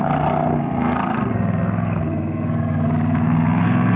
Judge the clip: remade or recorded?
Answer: remade